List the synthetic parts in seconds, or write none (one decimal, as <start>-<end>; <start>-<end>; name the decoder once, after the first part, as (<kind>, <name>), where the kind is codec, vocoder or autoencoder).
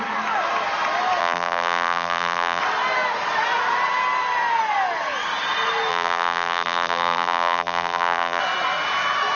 1.2-2.6 (vocoder, BigVGAN v2); 5.9-8.4